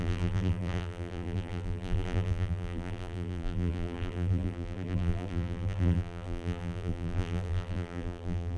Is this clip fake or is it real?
fake